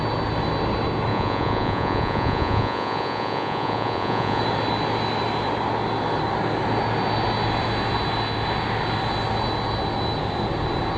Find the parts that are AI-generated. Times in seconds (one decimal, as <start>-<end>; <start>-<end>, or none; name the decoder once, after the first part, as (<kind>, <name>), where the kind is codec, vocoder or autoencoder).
1.1-4.4 (vocoder, Vocos)